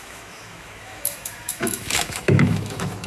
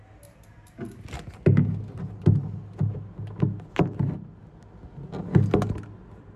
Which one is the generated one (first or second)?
first